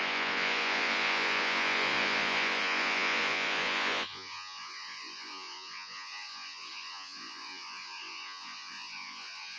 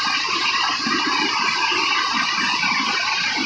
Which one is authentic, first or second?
second